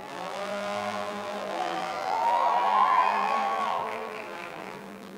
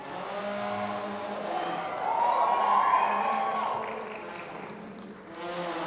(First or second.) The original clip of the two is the second